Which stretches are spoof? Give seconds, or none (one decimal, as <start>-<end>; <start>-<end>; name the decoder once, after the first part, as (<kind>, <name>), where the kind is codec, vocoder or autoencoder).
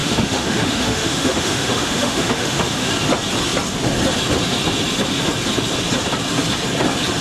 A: 0.0-2.9 (autoencoder, DAC-VAE)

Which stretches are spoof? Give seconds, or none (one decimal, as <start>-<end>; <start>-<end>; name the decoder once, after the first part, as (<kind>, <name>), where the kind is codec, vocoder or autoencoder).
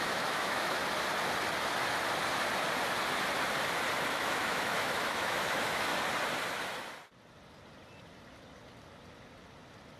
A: 0.0-0.8 (autoencoder, DAC-VAE); 4.1-5.9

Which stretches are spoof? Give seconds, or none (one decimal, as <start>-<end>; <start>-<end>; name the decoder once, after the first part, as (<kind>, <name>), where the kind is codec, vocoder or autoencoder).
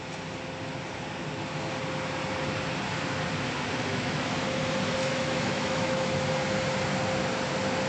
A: 3.9-4.4 (autoencoder, DAC-VAE); 5.0-6.3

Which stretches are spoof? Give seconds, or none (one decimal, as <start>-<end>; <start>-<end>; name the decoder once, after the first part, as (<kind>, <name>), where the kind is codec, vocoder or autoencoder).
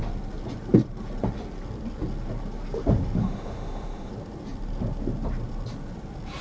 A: 3.2-4.1 (autoencoder, DAC-VAE)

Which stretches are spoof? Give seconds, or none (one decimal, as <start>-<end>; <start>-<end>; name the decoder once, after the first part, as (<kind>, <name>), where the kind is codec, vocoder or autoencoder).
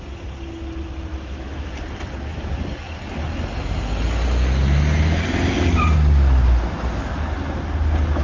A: 1.1-1.7 (autoencoder, DAC-VAE)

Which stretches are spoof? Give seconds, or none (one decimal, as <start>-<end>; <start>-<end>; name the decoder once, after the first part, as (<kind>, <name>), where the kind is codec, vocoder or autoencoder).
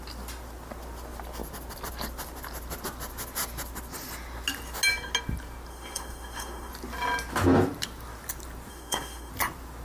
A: 5.7-6.7 (autoencoder, DAC-VAE); 8.7-9.3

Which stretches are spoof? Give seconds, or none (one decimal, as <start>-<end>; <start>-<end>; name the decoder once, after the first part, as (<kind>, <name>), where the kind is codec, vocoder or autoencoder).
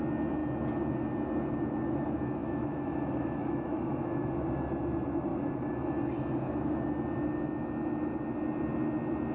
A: 2.4-4.3 (autoencoder, DAC-VAE)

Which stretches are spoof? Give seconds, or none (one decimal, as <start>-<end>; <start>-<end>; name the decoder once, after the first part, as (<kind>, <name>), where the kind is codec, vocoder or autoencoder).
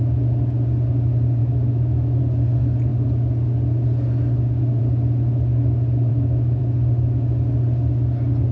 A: 1.4-2.2 (autoencoder, DAC-VAE); 6.1-6.6